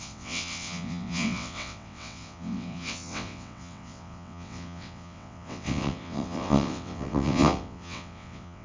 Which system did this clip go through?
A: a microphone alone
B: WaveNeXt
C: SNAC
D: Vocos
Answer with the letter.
B